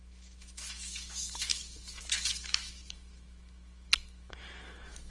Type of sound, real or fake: fake